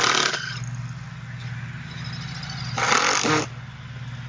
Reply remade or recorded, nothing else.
recorded